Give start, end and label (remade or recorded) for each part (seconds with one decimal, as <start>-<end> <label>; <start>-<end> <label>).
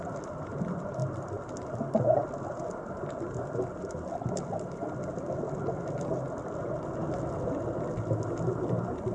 0.0-9.1 recorded